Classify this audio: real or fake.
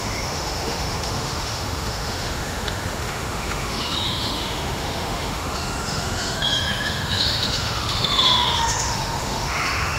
fake